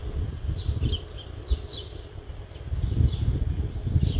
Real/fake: real